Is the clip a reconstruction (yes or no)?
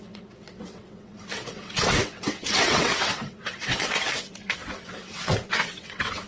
yes